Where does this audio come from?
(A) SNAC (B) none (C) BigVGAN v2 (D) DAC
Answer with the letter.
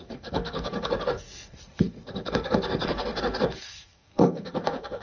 A